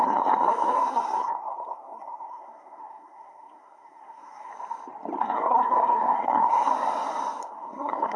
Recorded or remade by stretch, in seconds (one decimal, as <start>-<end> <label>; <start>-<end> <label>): 0.0-4.5 remade; 4.5-5.2 recorded; 5.2-6.7 remade; 6.7-7.4 recorded; 7.4-8.2 remade